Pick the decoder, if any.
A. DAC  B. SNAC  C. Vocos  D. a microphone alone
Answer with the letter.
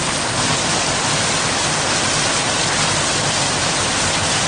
D